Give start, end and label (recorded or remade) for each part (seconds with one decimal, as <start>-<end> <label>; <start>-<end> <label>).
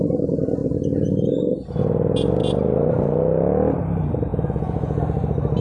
0.0-0.6 recorded; 0.6-1.4 remade; 1.4-4.3 recorded; 4.3-5.0 remade; 5.0-5.6 recorded